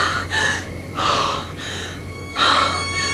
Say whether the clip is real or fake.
fake